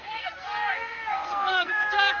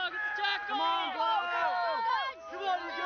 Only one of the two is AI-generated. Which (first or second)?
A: first